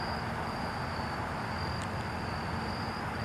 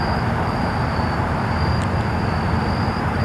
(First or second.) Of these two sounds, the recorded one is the first